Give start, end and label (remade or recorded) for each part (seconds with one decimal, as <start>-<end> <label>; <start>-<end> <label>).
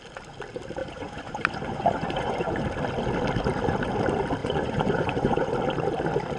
0.0-0.8 recorded; 0.8-2.6 remade; 2.6-4.4 recorded; 4.4-5.5 remade; 5.5-6.4 recorded